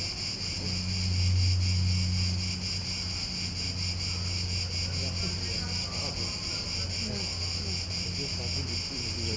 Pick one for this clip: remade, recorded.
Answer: recorded